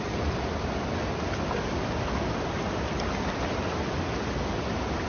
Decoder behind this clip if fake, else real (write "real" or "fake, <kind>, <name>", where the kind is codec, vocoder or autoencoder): real